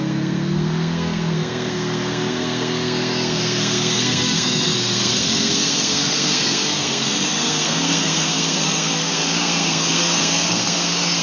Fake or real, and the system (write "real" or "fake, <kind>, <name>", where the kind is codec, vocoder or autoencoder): fake, codec, SNAC